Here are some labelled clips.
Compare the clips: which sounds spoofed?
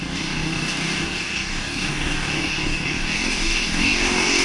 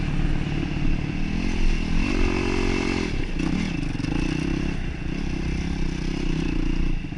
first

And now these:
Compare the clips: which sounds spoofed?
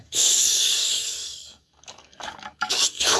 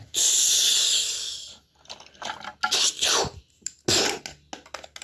first